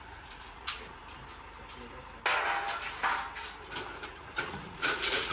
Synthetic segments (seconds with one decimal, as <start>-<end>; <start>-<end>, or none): 0.0-1.0; 4.1-5.3